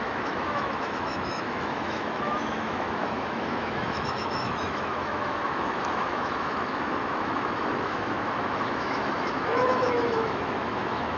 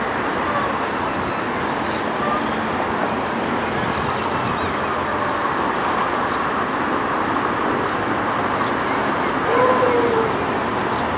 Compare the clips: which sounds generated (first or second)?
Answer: first